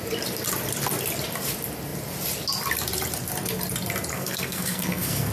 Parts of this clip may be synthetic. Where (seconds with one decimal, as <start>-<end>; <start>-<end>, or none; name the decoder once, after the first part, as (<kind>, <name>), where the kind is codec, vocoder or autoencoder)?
4.1-5.3 (codec, SNAC)